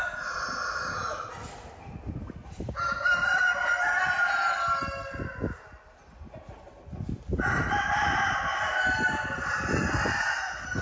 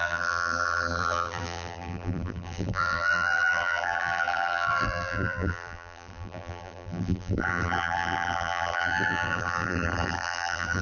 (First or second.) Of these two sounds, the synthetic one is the second